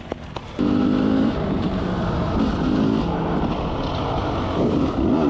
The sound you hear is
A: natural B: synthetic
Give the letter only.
A